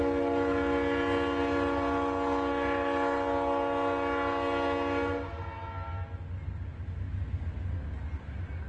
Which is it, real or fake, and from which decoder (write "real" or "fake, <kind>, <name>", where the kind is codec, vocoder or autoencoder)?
real